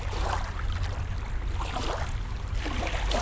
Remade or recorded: recorded